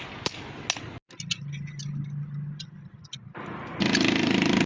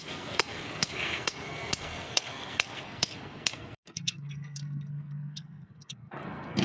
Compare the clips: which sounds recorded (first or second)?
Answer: first